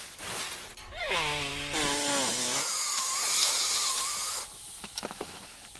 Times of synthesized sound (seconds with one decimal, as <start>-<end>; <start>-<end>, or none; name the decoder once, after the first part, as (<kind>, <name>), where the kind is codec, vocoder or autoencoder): 0.0-0.4 (autoencoder, DAC-VAE); 1.0-1.5; 2.3-5.8